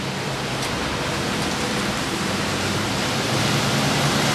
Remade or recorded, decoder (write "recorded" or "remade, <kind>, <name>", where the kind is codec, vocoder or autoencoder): remade, vocoder, BigVGAN v2